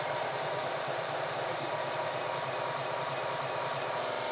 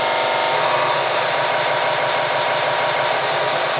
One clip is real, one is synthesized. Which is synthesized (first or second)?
first